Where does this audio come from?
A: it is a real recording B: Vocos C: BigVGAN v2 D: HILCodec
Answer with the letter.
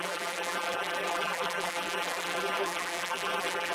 C